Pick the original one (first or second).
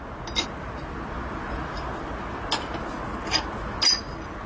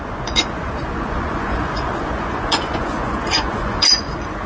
first